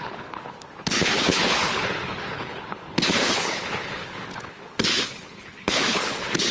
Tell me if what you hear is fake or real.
fake